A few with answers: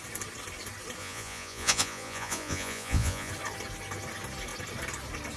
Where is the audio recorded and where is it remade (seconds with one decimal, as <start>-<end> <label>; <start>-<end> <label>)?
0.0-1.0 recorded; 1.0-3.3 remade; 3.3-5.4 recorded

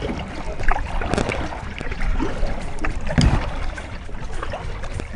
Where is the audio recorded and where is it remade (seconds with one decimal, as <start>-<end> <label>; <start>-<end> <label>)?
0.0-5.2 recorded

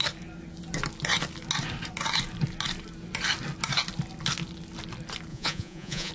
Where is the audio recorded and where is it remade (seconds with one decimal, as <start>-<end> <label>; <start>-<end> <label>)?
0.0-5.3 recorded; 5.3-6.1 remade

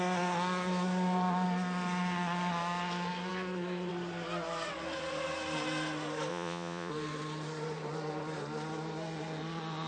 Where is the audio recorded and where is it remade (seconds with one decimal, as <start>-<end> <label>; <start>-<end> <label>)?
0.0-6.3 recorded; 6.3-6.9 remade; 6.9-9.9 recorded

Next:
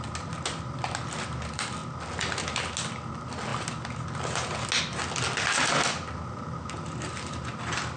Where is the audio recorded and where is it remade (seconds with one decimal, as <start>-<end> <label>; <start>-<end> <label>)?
0.0-8.0 recorded

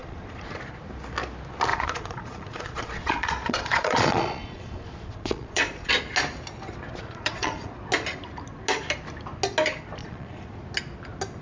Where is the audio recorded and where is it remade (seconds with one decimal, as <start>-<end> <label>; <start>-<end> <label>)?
0.0-0.6 remade; 0.6-1.7 recorded; 1.7-5.9 remade; 5.9-7.0 recorded; 7.0-7.7 remade; 7.7-10.0 recorded; 10.0-10.6 remade; 10.6-11.4 recorded

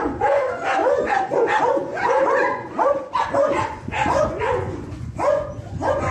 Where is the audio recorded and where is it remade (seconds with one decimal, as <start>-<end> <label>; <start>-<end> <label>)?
0.0-6.1 remade